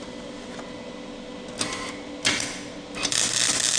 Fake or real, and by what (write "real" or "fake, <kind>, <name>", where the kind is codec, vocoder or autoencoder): real